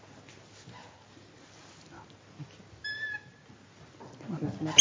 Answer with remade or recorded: recorded